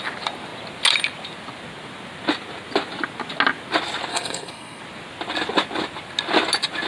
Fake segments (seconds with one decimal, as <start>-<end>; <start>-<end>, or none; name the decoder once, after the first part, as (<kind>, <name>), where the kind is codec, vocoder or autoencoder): 4.1-4.8 (codec, SNAC)